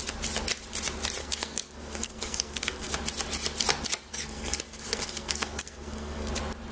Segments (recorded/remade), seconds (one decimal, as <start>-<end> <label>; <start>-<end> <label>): 0.0-1.2 recorded; 1.2-2.9 remade; 2.9-4.1 recorded; 4.1-6.3 remade; 6.3-6.7 recorded